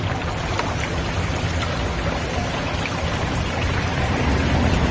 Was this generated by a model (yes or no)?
no